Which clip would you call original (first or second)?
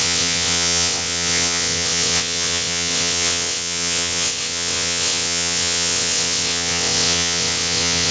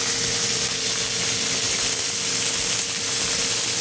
second